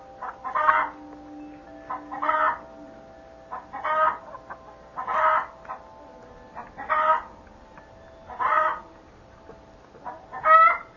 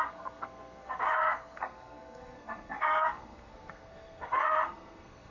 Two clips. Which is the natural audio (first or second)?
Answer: first